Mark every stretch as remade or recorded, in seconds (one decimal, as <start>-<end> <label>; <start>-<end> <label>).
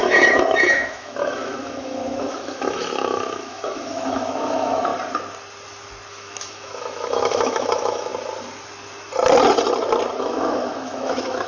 0.0-4.9 remade; 4.9-6.1 recorded; 6.1-8.1 remade; 8.1-10.2 recorded; 10.2-11.5 remade